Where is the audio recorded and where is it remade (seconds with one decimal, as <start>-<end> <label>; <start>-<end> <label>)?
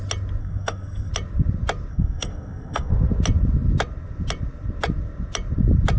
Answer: 0.0-0.4 recorded; 0.4-1.1 remade; 1.1-1.9 recorded; 1.9-2.9 remade; 2.9-6.0 recorded